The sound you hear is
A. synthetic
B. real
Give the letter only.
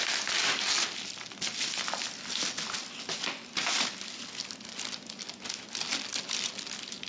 B